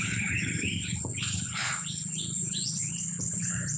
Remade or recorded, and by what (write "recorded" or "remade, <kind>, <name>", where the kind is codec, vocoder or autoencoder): remade, codec, HILCodec